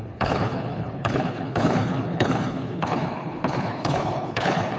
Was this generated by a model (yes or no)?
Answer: yes